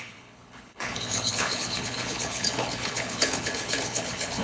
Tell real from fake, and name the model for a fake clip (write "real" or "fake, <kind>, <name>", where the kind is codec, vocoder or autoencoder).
fake, codec, HILCodec